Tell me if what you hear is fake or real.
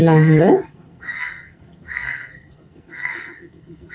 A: fake